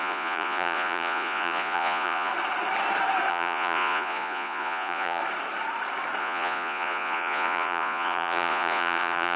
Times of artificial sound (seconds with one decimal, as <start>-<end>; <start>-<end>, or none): 0.0-2.3; 3.3-5.2; 6.2-9.4